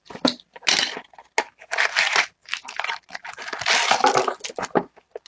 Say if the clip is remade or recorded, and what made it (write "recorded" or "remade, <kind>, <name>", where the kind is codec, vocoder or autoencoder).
recorded